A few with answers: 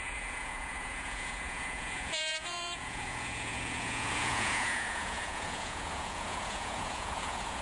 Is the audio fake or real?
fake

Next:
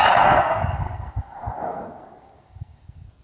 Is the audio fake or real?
fake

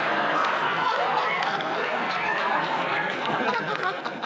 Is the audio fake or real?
fake